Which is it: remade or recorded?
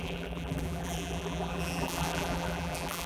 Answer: remade